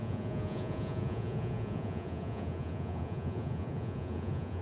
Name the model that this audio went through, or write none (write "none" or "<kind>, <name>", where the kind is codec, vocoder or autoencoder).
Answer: vocoder, Vocos